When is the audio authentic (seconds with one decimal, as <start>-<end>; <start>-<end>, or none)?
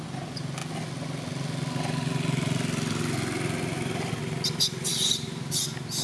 0.0-4.9; 5.6-6.0